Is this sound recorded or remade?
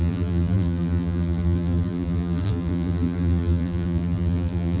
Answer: remade